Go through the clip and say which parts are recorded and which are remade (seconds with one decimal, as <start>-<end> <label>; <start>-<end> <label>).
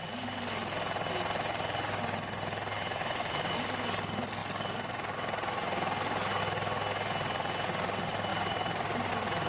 0.0-8.3 recorded; 8.3-9.1 remade; 9.1-9.5 recorded